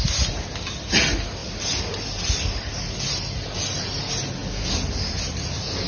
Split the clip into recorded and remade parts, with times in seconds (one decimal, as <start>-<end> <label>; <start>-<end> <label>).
0.0-5.9 recorded